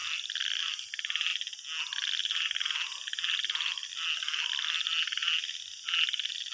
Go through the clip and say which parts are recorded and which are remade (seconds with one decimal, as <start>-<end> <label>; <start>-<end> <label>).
0.0-6.5 recorded